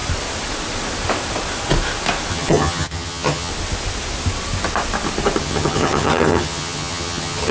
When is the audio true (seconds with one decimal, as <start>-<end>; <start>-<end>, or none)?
0.0-2.3; 3.5-5.4